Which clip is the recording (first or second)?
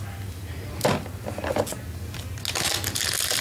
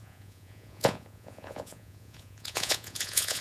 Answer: first